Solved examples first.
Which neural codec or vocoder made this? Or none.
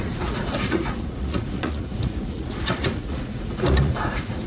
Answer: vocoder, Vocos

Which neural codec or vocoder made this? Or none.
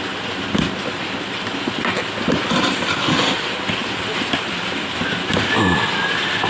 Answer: none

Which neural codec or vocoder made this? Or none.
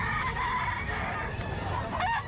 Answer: vocoder, BigVGAN v2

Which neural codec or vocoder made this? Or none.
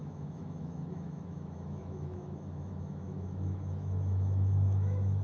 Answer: autoencoder, DAC-VAE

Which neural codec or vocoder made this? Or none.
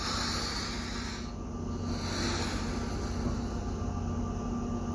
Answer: none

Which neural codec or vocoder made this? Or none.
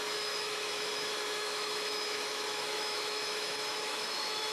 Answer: autoencoder, DAC-VAE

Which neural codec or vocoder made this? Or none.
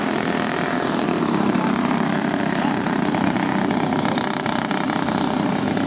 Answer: vocoder, BigVGAN v2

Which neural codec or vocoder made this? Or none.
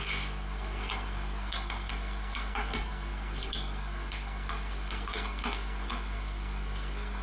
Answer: codec, SNAC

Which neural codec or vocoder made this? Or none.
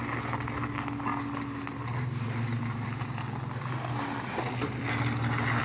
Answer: none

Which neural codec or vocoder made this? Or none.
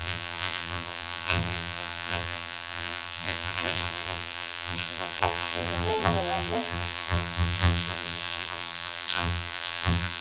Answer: vocoder, BigVGAN v2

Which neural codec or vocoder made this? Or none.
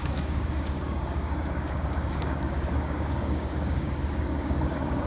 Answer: codec, DAC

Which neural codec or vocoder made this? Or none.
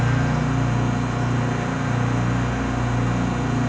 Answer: none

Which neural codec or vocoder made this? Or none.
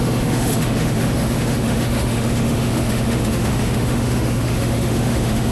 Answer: autoencoder, DAC-VAE